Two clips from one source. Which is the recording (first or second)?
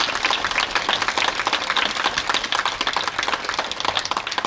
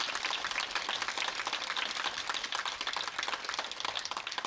first